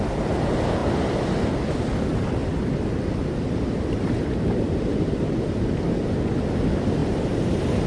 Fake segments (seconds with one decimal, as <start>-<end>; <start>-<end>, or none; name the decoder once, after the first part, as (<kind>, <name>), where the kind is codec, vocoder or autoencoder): 0.8-1.4 (vocoder, BigVGAN v2); 2.4-5.9